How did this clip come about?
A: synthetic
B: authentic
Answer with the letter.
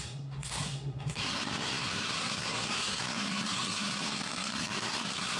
A